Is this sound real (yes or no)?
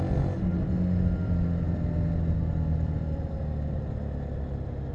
yes